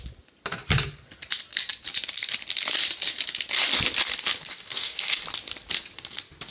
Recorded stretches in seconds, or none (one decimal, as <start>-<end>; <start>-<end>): 0.0-4.5; 5.2-6.5